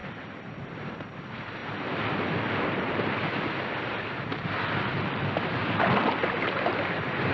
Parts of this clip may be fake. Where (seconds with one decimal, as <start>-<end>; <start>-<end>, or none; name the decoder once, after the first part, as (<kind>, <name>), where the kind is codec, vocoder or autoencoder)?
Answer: 0.0-1.6 (vocoder, BigVGAN v2); 2.6-3.3; 3.9-7.3